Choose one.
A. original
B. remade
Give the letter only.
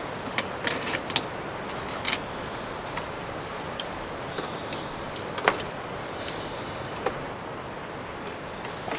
A